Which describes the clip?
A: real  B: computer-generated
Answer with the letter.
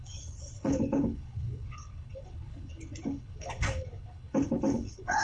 B